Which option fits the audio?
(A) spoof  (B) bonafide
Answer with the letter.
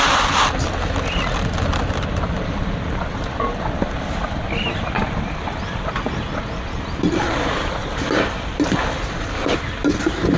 B